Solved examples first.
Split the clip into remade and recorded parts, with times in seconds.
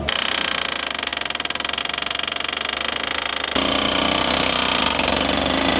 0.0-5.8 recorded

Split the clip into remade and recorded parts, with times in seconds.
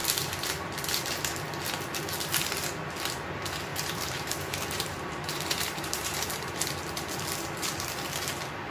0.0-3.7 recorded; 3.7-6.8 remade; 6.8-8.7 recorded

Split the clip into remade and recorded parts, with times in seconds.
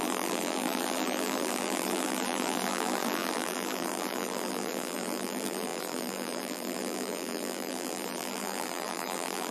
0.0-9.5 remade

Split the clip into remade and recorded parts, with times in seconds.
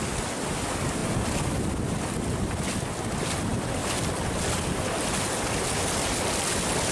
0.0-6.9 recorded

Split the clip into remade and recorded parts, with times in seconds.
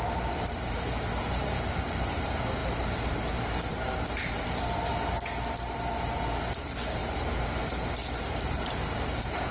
0.0-2.6 remade; 2.6-3.7 recorded; 3.7-4.9 remade; 4.9-6.5 recorded; 6.5-7.0 remade; 7.0-8.3 recorded; 8.3-9.5 remade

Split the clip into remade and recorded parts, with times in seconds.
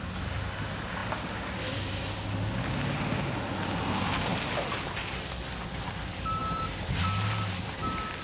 0.0-6.4 recorded; 6.4-6.9 remade; 6.9-8.2 recorded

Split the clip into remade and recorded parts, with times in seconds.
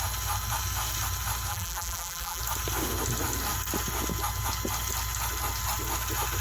0.0-1.5 recorded; 1.5-2.4 remade; 2.4-6.4 recorded